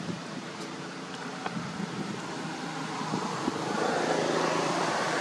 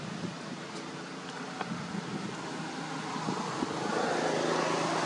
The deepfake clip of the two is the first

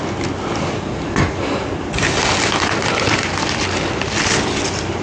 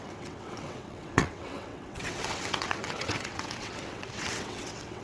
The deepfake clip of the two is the second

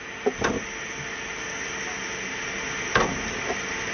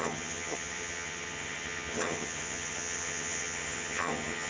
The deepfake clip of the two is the second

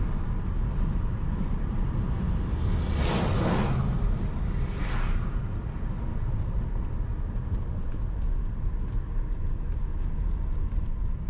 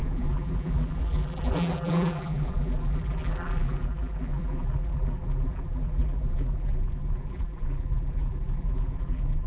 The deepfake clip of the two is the second